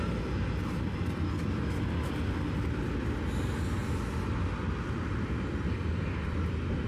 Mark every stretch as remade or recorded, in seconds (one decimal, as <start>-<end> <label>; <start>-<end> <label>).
0.0-6.9 recorded